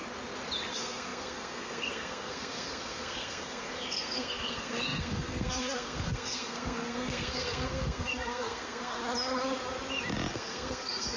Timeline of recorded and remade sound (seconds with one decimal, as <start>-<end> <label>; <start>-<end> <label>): 0.0-0.7 recorded; 0.7-9.0 remade; 9.0-10.3 recorded; 10.3-11.2 remade